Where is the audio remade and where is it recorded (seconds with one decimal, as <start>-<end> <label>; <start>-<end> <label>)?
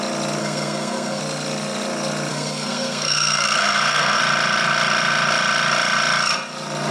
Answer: 0.0-0.4 recorded; 0.4-1.2 remade; 1.2-2.3 recorded; 2.3-4.2 remade; 4.2-6.9 recorded